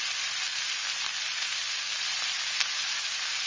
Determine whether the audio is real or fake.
real